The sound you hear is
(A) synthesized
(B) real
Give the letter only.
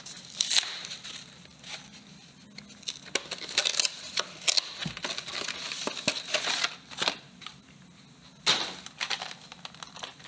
B